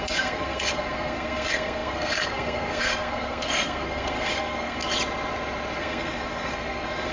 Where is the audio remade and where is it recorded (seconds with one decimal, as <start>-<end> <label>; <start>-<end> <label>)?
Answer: 0.0-4.8 remade; 4.8-5.8 recorded; 5.8-7.1 remade